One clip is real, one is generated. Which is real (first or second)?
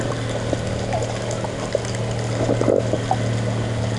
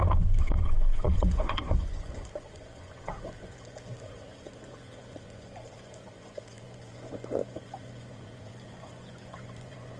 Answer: first